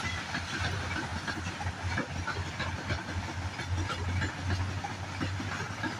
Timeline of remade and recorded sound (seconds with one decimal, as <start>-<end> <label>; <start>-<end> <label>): 0.0-6.0 recorded

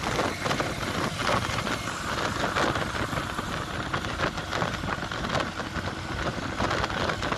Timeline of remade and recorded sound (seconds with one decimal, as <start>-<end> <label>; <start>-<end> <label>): 0.0-7.4 recorded

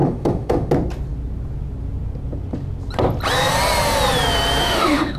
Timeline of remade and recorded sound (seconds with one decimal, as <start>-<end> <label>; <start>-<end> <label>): 0.0-0.7 remade; 0.7-4.6 recorded; 4.6-5.2 remade

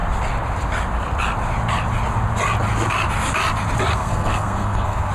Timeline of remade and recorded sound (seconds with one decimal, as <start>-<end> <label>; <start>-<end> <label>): 0.0-3.9 recorded; 3.9-5.1 remade

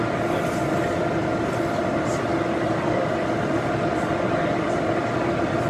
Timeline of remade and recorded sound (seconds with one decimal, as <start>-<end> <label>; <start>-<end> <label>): 0.0-5.7 recorded

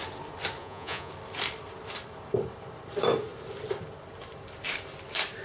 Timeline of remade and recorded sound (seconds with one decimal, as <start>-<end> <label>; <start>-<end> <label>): 0.0-0.6 recorded; 0.6-1.1 remade; 1.1-5.4 recorded